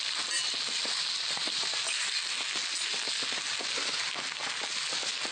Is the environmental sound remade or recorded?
recorded